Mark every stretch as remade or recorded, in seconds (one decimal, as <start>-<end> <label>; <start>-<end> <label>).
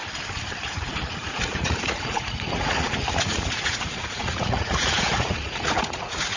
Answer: 0.0-0.7 recorded; 0.7-6.4 remade